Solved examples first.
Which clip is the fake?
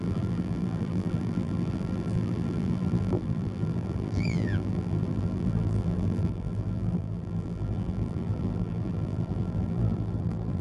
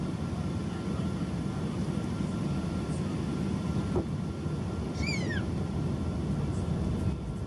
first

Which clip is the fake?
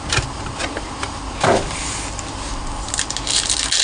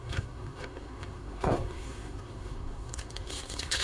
second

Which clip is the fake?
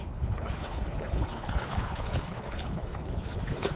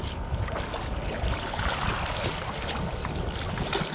first